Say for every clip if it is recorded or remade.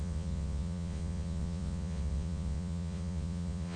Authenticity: remade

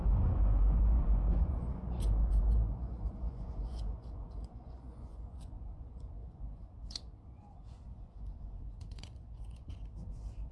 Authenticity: remade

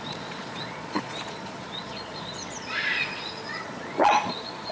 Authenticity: remade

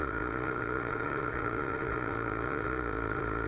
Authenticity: remade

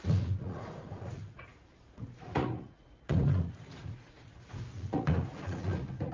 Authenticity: remade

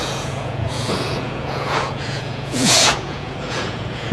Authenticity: remade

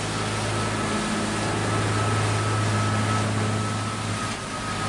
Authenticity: recorded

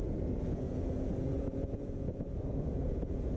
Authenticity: remade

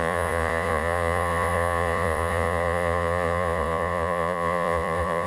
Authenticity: remade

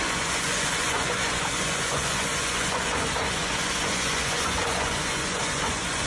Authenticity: remade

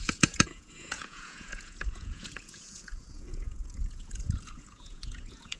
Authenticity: remade